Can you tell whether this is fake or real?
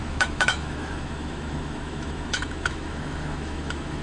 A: fake